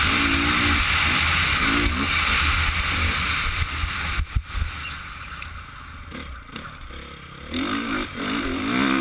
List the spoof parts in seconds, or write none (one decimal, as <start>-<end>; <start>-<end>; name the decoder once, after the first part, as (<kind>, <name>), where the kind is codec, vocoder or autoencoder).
1.5-2.2 (codec, DAC)